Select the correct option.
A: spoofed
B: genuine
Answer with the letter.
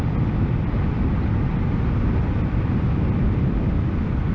B